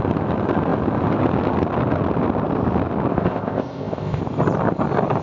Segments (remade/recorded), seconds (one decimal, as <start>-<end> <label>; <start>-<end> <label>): 0.0-3.1 recorded; 3.1-4.2 remade; 4.2-5.2 recorded